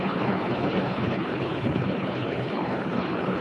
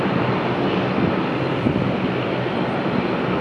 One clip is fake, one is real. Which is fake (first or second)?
first